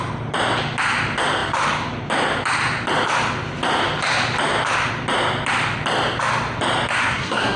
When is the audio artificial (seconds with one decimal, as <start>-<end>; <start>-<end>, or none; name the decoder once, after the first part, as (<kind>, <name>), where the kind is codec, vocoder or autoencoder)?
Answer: 7.0-7.6 (codec, SNAC)

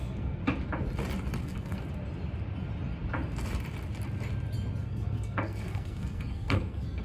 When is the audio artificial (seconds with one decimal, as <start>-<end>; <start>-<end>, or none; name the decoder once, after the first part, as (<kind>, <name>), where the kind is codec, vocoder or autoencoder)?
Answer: 0.0-0.4 (codec, SNAC); 1.4-1.8; 4.8-7.0

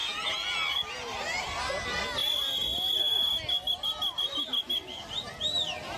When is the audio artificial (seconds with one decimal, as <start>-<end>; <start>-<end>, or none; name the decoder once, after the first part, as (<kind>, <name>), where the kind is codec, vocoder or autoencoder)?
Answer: none

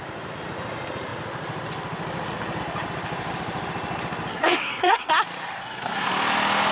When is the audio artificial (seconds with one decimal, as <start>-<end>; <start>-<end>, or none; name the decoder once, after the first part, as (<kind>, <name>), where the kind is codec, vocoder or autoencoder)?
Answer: 4.3-5.1 (codec, SNAC); 5.6-6.1

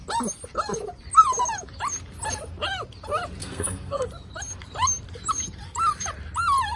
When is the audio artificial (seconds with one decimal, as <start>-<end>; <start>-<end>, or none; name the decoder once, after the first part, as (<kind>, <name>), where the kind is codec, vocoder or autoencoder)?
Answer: 3.4-4.1 (codec, SNAC)